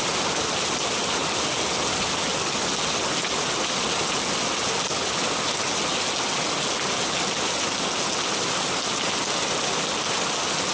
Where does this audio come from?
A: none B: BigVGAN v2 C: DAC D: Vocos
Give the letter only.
A